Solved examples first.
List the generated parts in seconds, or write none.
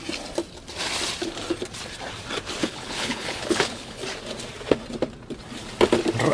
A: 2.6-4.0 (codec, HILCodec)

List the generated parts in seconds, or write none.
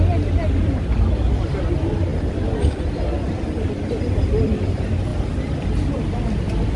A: none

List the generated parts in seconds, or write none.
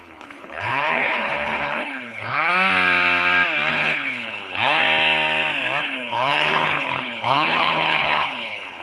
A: 0.0-2.5 (codec, HILCodec); 3.7-4.8; 5.8-8.8